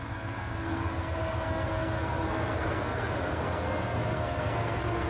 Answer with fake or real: fake